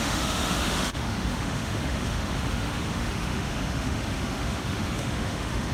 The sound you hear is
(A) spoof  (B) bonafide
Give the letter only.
A